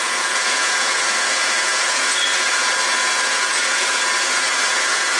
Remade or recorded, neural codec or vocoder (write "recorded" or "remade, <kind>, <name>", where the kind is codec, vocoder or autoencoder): remade, vocoder, Vocos